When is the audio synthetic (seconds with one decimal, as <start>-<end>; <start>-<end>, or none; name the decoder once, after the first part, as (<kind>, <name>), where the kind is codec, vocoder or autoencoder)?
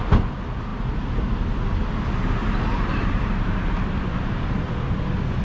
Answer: 2.4-4.6 (vocoder, BigVGAN v2)